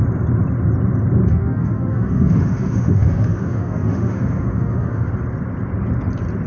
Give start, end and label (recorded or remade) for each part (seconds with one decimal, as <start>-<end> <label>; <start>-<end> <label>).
0.0-1.3 recorded; 1.3-5.1 remade; 5.1-6.5 recorded